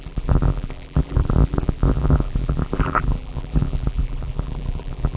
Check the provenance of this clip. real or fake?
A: fake